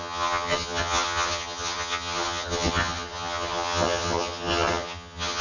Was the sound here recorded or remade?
remade